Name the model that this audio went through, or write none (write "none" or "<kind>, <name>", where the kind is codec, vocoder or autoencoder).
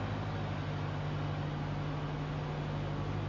none